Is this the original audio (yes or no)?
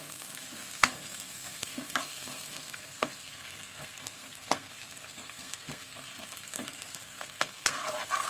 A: no